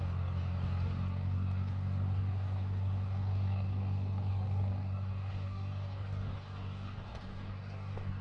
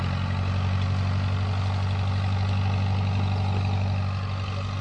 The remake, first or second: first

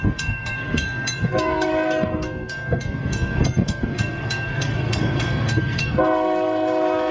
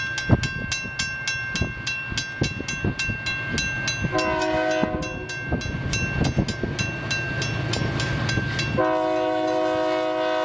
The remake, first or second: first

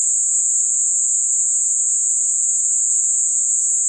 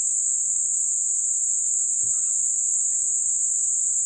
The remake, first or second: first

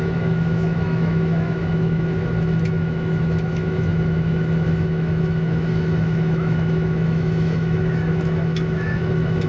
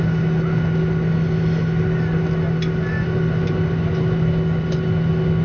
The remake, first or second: first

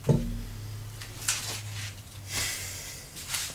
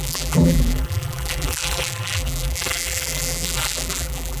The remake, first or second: second